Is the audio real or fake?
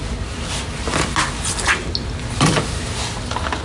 real